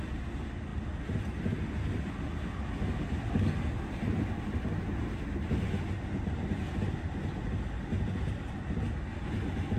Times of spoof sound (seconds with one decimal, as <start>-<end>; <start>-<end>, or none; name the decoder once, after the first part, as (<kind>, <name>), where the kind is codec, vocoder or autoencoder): none